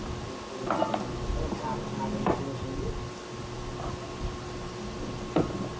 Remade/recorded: recorded